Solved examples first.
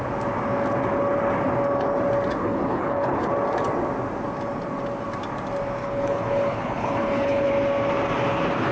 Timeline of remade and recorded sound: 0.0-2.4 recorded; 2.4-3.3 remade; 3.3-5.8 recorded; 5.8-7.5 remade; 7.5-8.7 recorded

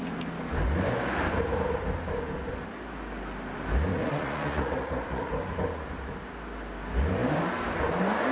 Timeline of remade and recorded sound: 0.0-3.9 recorded; 3.9-5.3 remade; 5.3-8.3 recorded

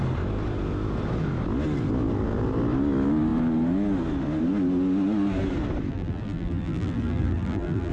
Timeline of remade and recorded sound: 0.0-5.9 recorded; 5.9-7.9 remade